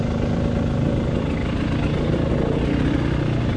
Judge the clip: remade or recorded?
recorded